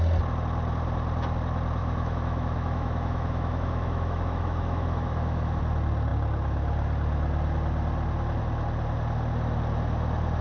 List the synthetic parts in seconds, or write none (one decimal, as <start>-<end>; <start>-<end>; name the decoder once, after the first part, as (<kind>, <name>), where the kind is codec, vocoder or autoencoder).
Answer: 1.8-5.6 (autoencoder, DAC-VAE)

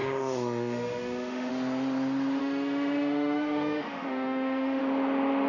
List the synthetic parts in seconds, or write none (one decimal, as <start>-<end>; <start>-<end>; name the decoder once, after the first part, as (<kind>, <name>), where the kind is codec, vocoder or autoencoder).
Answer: 0.0-1.5 (autoencoder, DAC-VAE); 2.4-4.8